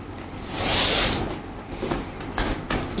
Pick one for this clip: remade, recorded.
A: recorded